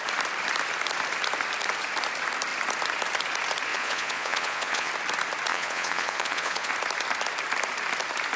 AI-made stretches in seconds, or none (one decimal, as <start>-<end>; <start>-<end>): 3.7-4.9; 5.5-6.7